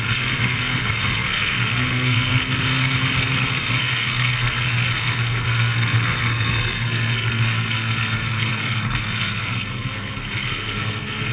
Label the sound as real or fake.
fake